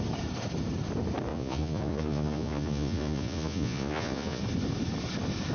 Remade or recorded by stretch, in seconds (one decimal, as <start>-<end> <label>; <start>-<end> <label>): 0.0-1.3 recorded; 1.3-4.4 remade; 4.4-5.5 recorded

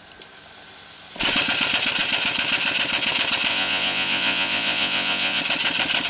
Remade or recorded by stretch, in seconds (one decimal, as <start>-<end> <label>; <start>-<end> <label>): 0.0-3.5 recorded; 3.5-5.4 remade; 5.4-6.1 recorded

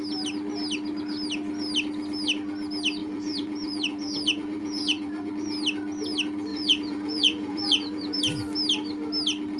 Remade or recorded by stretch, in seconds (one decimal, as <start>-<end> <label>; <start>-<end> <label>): 0.0-3.0 recorded; 3.0-5.3 remade; 5.3-6.5 recorded; 6.5-8.2 remade; 8.2-9.6 recorded

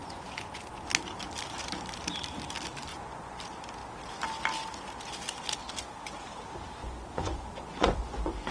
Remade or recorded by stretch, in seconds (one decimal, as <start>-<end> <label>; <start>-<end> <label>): 0.0-0.8 remade; 0.8-2.9 recorded; 2.9-3.4 remade; 3.4-6.8 recorded; 6.8-8.5 remade

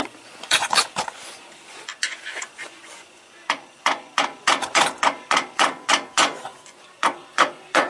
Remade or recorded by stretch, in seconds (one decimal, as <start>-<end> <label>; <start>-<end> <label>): 0.0-7.9 remade

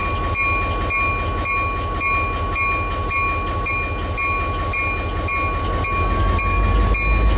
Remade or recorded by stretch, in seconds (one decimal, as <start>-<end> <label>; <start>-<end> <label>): 0.0-7.4 recorded

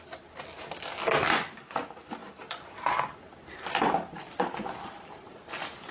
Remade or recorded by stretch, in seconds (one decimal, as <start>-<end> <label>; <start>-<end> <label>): 0.0-5.9 recorded

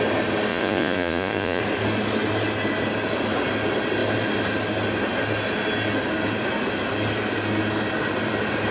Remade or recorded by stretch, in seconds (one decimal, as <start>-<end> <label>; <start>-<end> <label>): 0.0-0.5 recorded; 0.5-1.6 remade; 1.6-8.7 recorded